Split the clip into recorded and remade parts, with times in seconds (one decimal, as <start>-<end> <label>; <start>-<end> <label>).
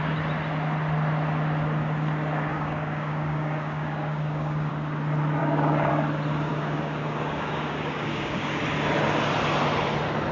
0.0-2.5 recorded; 2.5-4.7 remade; 4.7-5.4 recorded; 5.4-5.9 remade; 5.9-6.5 recorded; 6.5-8.6 remade; 8.6-10.3 recorded